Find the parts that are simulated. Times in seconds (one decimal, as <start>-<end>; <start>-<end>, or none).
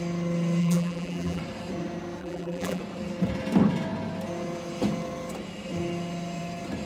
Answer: 0.6-1.4; 2.2-2.8